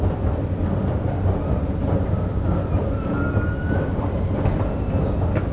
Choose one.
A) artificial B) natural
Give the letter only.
B